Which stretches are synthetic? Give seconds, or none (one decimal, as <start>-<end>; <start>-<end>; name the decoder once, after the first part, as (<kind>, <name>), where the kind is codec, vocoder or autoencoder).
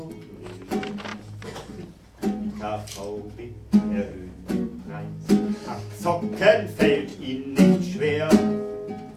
none